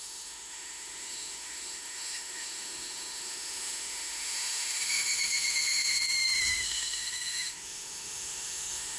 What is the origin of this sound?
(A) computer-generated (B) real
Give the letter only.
A